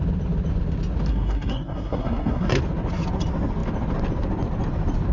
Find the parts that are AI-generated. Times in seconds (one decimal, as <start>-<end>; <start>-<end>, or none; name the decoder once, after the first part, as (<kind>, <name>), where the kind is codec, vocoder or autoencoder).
1.1-2.6 (codec, SNAC)